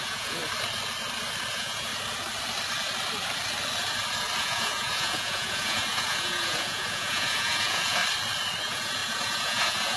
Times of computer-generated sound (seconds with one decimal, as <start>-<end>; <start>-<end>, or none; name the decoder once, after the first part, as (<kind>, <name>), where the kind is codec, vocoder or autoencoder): 0.0-0.4 (vocoder, Vocos); 1.5-1.9; 4.4-8.0; 8.6-10.0